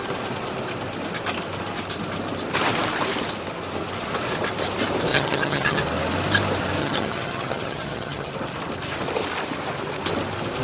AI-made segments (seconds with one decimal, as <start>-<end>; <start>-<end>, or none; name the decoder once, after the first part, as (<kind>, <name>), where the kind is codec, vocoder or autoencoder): 5.1-5.8 (vocoder, HiFi-GAN); 6.8-8.3